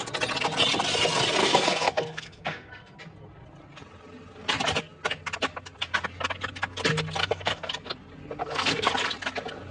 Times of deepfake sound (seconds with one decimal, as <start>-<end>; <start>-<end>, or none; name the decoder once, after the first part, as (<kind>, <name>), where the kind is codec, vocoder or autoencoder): 1.4-3.0 (codec, SNAC); 7.2-7.7; 8.4-8.9